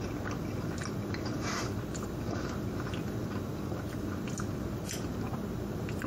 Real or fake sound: real